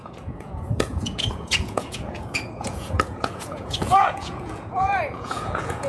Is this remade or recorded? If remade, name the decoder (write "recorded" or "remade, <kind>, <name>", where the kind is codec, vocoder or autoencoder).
remade, vocoder, Vocos